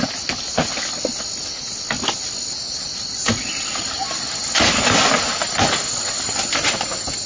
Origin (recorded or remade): recorded